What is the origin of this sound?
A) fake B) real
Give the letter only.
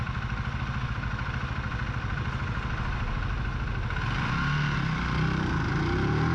B